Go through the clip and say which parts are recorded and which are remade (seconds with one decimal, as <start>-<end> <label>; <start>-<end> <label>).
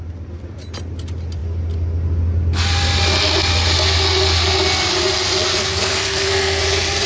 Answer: 0.0-5.5 recorded; 5.5-6.6 remade; 6.6-7.1 recorded